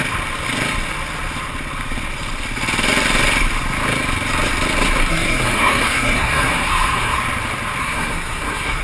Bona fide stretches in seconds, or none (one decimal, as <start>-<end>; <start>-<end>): 0.0-5.1; 7.2-7.8